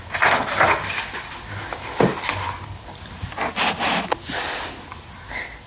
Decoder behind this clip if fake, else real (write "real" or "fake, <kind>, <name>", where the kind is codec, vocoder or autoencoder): real